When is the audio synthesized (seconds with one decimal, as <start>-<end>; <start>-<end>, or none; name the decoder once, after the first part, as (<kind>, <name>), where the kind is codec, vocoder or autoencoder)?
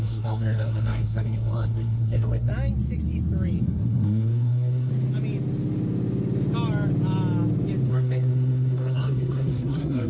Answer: 0.0-2.5 (codec, SNAC); 3.6-4.9; 7.9-10.1